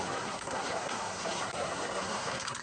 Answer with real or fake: fake